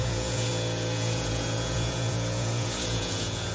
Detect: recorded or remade remade